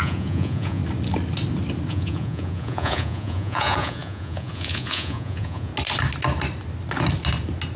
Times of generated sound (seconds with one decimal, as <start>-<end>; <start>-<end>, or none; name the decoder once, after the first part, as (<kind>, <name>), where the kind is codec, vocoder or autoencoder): 0.0-0.8 (vocoder, Vocos); 1.9-5.7